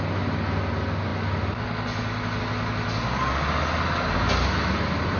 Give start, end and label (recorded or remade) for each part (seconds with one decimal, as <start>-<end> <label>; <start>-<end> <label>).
0.0-5.2 recorded